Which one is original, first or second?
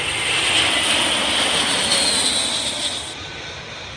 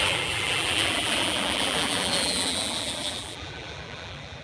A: first